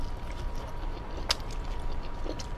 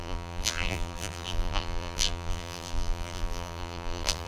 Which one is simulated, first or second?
second